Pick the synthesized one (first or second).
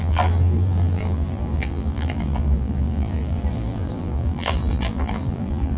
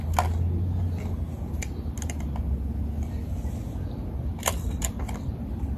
first